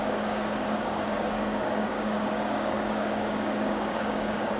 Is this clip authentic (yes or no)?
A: no